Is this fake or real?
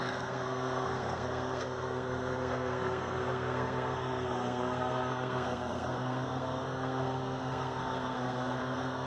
fake